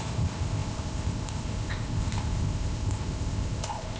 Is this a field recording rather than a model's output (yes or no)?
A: no